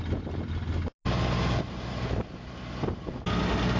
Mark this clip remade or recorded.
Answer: recorded